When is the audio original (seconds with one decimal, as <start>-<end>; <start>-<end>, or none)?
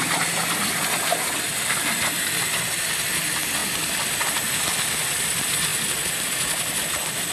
0.0-7.3